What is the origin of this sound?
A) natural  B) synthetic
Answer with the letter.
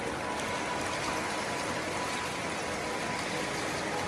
A